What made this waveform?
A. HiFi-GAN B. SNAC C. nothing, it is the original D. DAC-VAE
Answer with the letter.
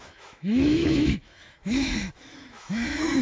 D